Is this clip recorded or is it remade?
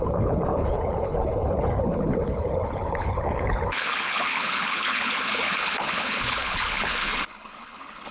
remade